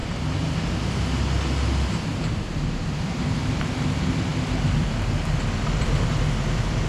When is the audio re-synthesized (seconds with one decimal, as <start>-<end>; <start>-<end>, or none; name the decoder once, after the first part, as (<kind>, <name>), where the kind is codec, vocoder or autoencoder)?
2.1-3.5 (vocoder, BigVGAN v2)